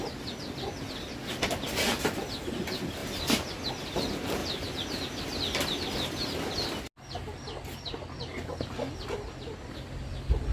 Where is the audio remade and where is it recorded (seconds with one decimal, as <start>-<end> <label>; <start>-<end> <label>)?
0.0-3.0 recorded; 3.0-3.7 remade; 3.7-4.4 recorded; 4.4-5.0 remade; 5.0-10.5 recorded